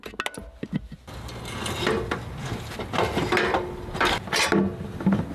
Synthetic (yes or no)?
no